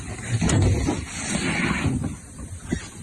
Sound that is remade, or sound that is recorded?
recorded